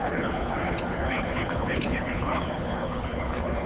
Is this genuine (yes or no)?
no